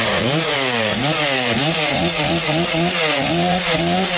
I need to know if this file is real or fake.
fake